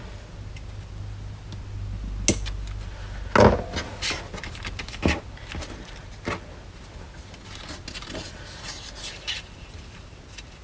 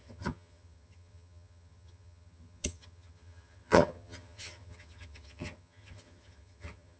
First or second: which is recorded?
first